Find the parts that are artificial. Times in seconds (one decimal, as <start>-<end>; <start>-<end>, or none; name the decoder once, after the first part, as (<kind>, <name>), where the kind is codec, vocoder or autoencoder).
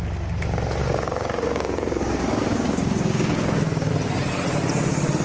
0.8-3.9 (codec, DAC)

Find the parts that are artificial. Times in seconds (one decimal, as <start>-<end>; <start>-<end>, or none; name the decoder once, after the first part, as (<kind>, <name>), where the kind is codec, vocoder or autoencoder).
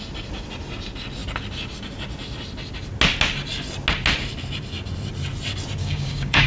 5.8-6.5 (codec, DAC)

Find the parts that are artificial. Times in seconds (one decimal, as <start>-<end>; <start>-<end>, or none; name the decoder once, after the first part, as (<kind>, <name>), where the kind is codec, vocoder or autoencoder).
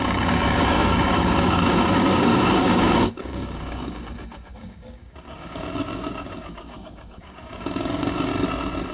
0.0-8.3 (codec, DAC)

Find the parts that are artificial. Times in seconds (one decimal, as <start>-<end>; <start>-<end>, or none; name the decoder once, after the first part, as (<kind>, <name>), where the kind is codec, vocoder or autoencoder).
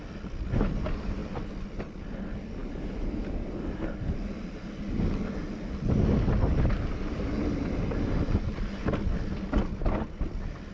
none